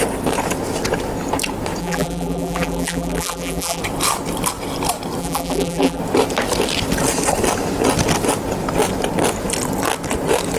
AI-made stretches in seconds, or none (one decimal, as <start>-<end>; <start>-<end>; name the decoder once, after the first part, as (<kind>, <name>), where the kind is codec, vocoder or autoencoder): 1.8-3.8 (vocoder, BigVGAN v2); 5.2-6.0